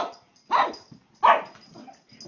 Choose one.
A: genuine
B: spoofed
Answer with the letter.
A